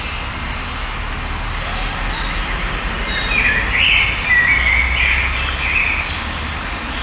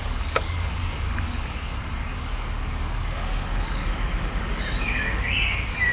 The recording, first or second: first